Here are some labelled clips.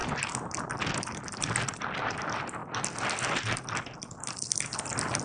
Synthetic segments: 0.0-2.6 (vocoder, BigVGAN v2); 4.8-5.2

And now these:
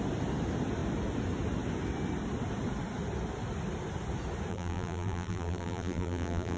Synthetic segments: 4.5-6.6 (vocoder, BigVGAN v2)